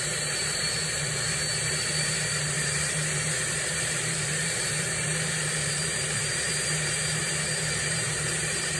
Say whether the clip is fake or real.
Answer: fake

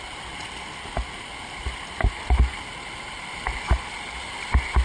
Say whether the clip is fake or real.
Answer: real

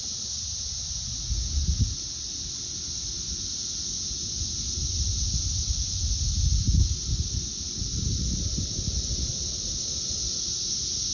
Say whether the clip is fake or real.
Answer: real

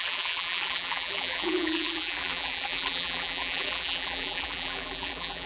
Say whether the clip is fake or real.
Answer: fake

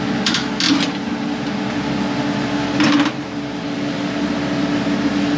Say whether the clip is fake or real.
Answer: real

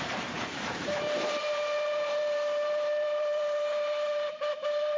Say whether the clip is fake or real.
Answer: fake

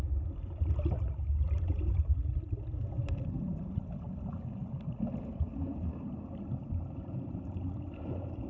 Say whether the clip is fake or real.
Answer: real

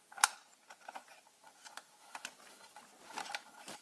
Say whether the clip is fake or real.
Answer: real